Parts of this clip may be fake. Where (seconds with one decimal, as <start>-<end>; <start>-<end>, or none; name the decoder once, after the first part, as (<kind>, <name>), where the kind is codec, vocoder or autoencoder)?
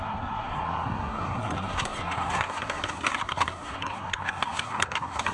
0.0-5.3 (codec, SNAC)